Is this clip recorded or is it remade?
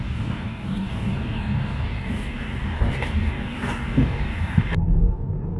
remade